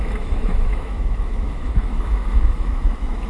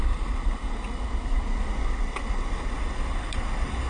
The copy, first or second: first